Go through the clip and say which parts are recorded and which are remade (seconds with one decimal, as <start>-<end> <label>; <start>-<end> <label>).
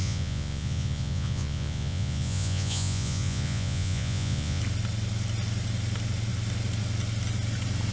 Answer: 0.0-4.6 remade; 4.6-7.9 recorded